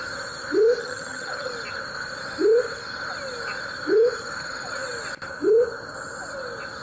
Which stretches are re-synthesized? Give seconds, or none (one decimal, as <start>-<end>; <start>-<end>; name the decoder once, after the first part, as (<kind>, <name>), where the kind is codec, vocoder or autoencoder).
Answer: 0.8-1.5 (vocoder, HiFi-GAN)

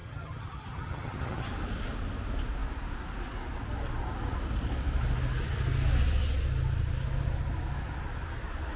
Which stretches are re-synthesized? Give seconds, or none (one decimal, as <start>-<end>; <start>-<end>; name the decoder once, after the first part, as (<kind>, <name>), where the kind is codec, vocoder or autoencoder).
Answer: 0.0-1.5 (vocoder, HiFi-GAN)

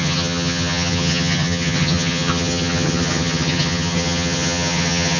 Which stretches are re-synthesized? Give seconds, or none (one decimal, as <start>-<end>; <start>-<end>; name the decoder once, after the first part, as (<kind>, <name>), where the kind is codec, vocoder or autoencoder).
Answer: 0.0-5.2 (vocoder, HiFi-GAN)

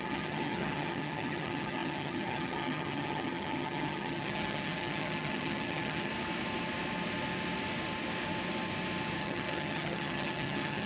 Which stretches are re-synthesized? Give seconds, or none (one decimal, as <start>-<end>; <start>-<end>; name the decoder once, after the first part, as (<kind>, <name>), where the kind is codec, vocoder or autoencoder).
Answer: 0.0-6.1 (vocoder, HiFi-GAN); 9.2-10.9

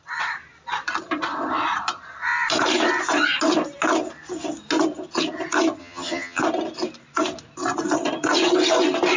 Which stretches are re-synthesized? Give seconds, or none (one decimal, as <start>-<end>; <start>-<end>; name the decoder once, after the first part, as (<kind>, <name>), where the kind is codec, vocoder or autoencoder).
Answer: 5.8-6.4 (vocoder, HiFi-GAN)

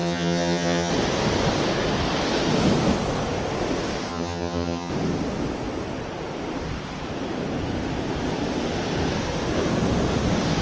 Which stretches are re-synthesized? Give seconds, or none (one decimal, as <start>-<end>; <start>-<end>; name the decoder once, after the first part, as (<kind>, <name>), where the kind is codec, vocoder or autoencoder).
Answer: 0.0-0.9 (vocoder, HiFi-GAN); 4.1-4.9

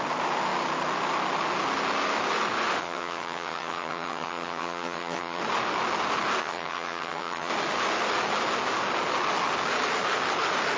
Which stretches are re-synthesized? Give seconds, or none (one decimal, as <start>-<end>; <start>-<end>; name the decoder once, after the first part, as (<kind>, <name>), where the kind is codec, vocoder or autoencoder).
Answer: 2.8-5.4 (vocoder, HiFi-GAN); 6.4-7.5

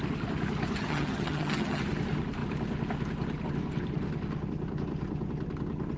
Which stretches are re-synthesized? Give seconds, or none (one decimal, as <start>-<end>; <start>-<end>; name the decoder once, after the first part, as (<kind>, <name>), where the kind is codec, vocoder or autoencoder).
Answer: 0.8-1.8 (vocoder, HiFi-GAN)